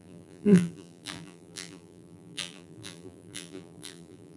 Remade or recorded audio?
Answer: remade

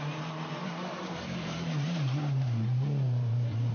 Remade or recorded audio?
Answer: remade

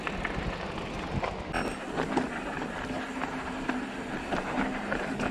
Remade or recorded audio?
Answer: recorded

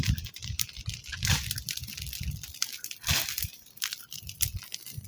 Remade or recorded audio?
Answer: recorded